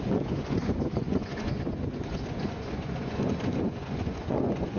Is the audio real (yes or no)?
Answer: no